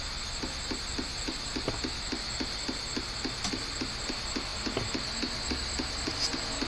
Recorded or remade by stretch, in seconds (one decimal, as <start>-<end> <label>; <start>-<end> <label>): 0.0-6.7 recorded